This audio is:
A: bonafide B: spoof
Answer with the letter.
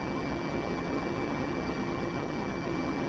B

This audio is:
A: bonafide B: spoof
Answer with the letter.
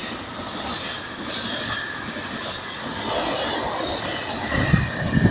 A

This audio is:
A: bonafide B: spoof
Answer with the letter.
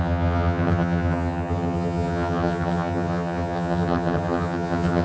B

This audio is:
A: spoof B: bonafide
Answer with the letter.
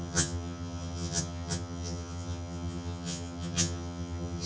A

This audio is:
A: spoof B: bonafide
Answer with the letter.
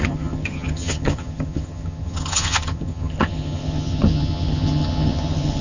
A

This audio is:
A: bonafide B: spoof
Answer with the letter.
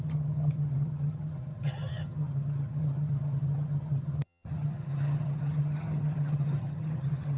B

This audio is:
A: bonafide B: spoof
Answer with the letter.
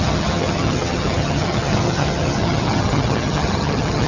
B